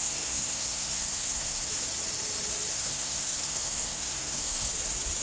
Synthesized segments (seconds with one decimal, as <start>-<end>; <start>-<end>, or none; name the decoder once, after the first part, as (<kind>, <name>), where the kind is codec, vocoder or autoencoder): 0.0-1.7 (codec, SNAC); 2.7-4.7